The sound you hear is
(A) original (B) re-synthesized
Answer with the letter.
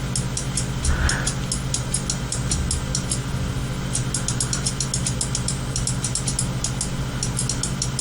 A